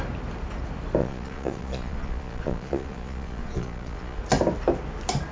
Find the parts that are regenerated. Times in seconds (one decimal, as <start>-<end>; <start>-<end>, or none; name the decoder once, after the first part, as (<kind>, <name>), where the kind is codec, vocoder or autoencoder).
1.0-4.2 (vocoder, Vocos)